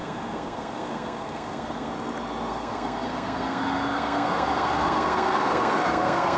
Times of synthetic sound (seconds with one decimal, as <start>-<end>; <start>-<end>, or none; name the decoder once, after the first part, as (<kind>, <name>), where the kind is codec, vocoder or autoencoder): 0.0-1.9 (codec, SNAC); 2.5-6.4